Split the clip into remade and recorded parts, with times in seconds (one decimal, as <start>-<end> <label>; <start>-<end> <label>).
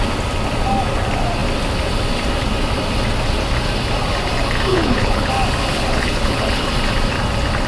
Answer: 0.0-4.7 recorded; 4.7-5.3 remade; 5.3-5.7 recorded; 5.7-6.7 remade; 6.7-7.7 recorded